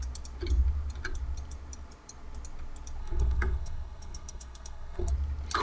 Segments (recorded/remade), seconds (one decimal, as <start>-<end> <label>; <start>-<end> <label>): 0.0-3.0 recorded; 3.0-5.1 remade; 5.1-5.6 recorded